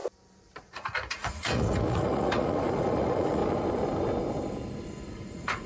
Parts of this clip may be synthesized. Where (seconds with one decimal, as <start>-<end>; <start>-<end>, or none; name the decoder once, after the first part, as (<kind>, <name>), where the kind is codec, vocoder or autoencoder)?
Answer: 0.6-3.4 (vocoder, Vocos); 5.1-5.7